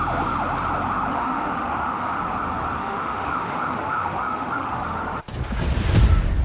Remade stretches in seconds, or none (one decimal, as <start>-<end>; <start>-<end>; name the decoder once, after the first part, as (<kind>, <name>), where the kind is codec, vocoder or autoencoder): 1.1-2.2 (autoencoder, DAC-VAE); 2.8-5.2